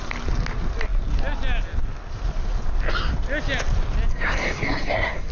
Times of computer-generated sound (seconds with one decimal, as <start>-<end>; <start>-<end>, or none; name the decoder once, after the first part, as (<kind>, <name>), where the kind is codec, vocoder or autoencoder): 4.1-5.3 (codec, SNAC)

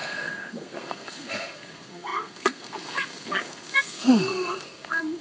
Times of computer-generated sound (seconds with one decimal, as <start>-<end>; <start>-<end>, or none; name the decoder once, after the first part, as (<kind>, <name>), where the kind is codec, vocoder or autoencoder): 0.0-5.2 (codec, SNAC)

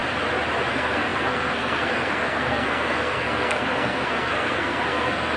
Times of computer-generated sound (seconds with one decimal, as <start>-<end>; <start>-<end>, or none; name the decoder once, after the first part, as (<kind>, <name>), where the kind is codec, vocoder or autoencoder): 0.7-5.4 (codec, SNAC)

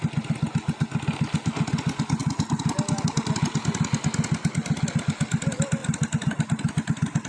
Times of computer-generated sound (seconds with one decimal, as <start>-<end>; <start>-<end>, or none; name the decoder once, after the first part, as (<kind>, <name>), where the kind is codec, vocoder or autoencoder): none